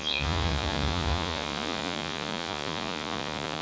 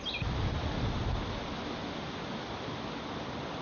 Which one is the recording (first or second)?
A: second